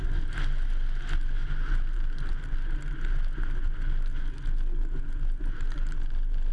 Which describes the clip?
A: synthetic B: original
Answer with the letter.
B